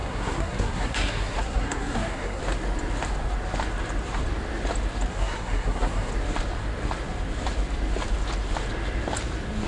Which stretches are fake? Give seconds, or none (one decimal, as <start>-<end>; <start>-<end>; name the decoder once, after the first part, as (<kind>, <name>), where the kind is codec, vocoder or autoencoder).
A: 0.0-2.4 (codec, SNAC); 5.1-6.1